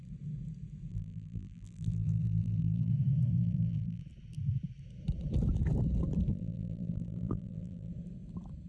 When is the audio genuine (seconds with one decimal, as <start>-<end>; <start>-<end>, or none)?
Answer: 0.0-0.9; 2.9-3.4; 4.0-6.3; 7.9-8.7